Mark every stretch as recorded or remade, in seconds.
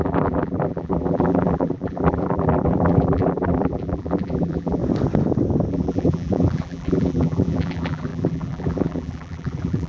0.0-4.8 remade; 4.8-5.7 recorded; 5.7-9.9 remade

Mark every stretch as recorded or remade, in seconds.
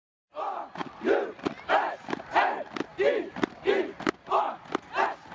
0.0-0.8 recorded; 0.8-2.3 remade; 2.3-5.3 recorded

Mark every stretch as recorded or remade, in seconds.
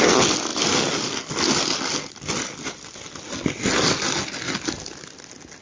0.0-5.6 recorded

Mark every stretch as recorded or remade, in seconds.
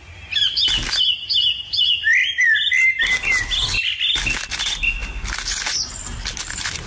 0.0-2.2 recorded; 2.2-3.0 remade; 3.0-6.9 recorded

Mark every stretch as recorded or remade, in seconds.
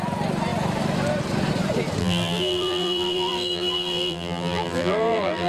0.0-2.0 recorded; 2.0-5.5 remade